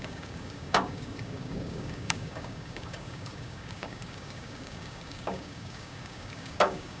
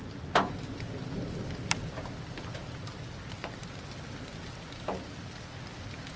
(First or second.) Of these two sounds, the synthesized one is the first